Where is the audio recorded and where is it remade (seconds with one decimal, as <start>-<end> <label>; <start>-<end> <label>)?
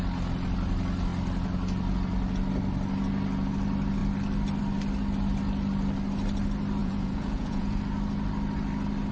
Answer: 0.0-6.8 recorded; 6.8-7.8 remade; 7.8-9.1 recorded